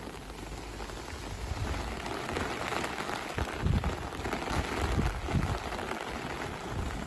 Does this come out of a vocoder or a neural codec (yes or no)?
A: no